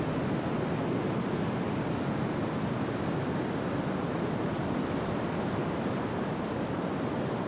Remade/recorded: recorded